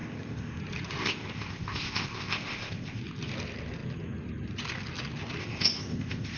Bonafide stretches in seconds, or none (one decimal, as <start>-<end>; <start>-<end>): 0.6-1.0; 3.0-5.4